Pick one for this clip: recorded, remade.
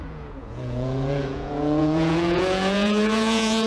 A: remade